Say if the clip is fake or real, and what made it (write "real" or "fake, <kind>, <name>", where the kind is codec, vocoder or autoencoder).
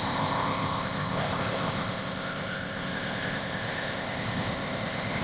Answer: fake, codec, ZipCodec